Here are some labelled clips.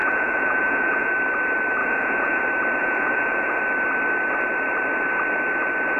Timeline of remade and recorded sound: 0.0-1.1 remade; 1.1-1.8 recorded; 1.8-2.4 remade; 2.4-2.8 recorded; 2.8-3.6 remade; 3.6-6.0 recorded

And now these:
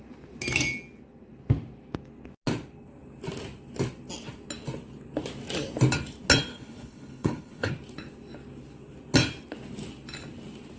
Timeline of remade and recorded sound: 0.0-6.5 recorded; 6.5-7.7 remade; 7.7-10.8 recorded

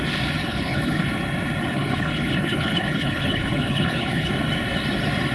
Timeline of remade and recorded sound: 0.0-0.4 recorded; 0.4-1.1 remade; 1.1-1.7 recorded; 1.7-4.3 remade; 4.3-5.3 recorded

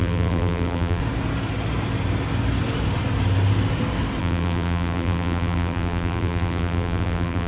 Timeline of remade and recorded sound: 0.0-1.0 remade; 1.0-4.2 recorded; 4.2-7.5 remade

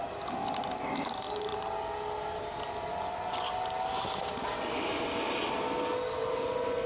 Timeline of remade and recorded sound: 0.0-6.9 recorded

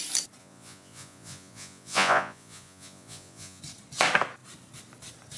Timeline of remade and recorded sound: 0.0-0.4 recorded; 0.4-3.6 remade; 3.6-5.4 recorded

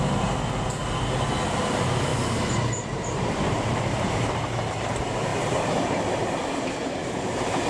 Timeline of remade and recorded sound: 0.0-2.1 recorded; 2.1-4.6 remade; 4.6-5.3 recorded; 5.3-6.3 remade; 6.3-7.7 recorded